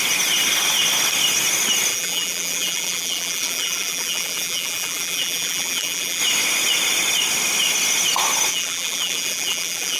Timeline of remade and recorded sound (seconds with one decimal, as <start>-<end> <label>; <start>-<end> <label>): 0.0-1.9 recorded; 1.9-6.2 remade; 6.2-8.5 recorded; 8.5-10.0 remade